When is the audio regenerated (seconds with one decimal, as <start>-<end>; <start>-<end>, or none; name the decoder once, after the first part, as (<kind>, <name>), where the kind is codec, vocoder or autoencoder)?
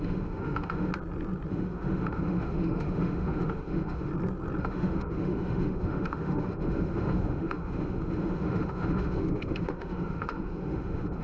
0.0-0.9 (autoencoder, DAC-VAE); 1.5-4.1; 4.6-11.2